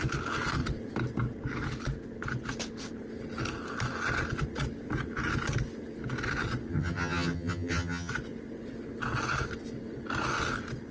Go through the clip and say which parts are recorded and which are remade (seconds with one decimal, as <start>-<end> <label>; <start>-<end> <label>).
0.0-6.7 recorded; 6.7-8.1 remade; 8.1-10.9 recorded